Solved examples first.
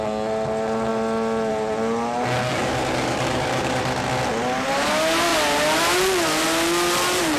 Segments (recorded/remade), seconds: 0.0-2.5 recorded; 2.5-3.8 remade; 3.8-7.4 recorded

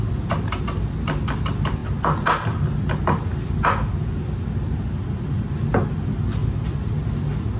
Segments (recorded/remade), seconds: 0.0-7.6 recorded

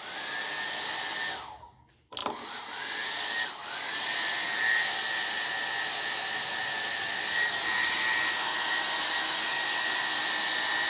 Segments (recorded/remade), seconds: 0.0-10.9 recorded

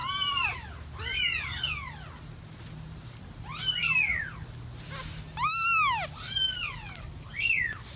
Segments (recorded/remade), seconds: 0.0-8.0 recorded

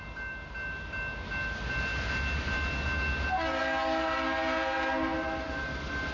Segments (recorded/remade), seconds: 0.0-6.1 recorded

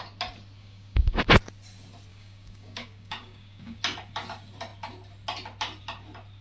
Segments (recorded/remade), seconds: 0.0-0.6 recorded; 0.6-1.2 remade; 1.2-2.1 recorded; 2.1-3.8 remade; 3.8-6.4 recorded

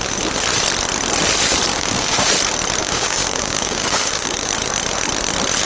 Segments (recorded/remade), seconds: 0.0-1.7 recorded; 1.7-2.3 remade; 2.3-2.8 recorded; 2.8-4.5 remade; 4.5-5.7 recorded